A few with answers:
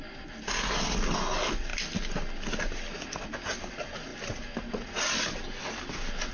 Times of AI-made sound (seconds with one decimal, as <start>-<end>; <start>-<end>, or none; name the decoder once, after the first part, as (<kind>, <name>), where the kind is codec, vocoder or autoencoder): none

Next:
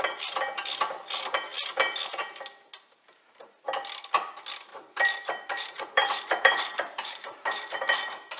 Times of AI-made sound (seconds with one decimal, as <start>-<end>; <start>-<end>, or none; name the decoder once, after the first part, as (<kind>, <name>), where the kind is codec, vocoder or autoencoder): 4.7-7.8 (vocoder, BigVGAN v2)

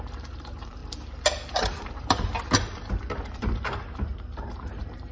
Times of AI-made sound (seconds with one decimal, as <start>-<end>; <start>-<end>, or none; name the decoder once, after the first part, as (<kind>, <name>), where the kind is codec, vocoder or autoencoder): 0.0-0.8 (vocoder, BigVGAN v2); 1.5-2.3; 3.4-5.1